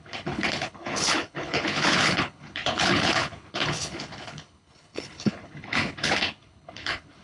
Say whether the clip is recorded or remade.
remade